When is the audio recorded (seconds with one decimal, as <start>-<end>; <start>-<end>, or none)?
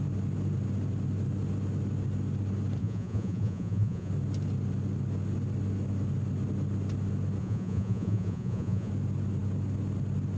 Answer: 0.0-2.8; 4.1-7.4; 8.9-10.4